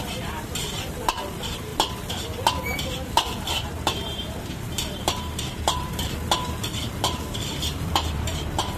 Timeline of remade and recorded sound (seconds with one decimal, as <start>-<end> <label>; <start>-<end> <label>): 0.0-8.8 remade